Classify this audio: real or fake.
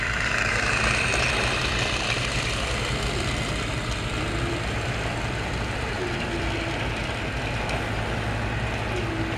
real